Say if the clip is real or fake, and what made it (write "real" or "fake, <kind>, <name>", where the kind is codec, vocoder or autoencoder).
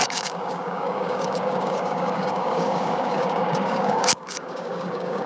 fake, codec, DAC